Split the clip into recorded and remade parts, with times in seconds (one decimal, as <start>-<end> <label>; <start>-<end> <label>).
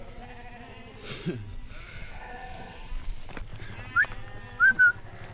0.0-1.9 recorded; 1.9-2.9 remade; 2.9-5.3 recorded